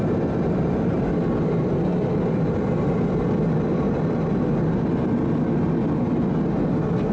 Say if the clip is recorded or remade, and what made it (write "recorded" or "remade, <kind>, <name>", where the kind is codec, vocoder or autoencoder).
recorded